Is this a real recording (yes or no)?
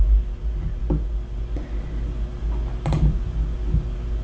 yes